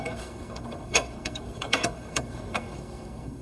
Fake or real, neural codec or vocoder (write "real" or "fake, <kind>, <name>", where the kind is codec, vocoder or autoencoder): fake, codec, SNAC